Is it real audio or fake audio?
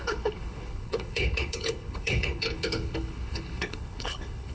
fake